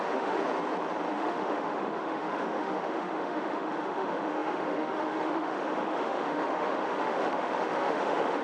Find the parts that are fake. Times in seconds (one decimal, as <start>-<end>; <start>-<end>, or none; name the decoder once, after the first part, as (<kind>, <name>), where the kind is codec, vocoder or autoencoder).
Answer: 0.0-0.4 (autoencoder, DAC-VAE); 1.1-8.4